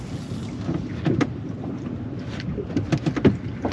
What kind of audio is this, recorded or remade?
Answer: recorded